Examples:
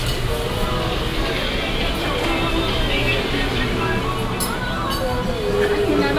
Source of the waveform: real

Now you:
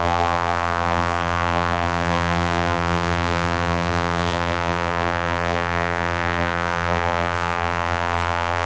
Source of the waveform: fake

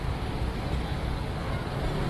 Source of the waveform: real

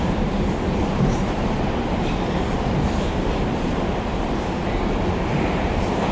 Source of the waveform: fake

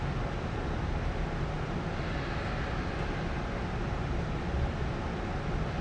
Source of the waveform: real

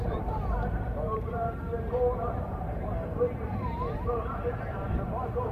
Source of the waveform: fake